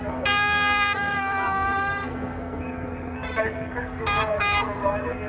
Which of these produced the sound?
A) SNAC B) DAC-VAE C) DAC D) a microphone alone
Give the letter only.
A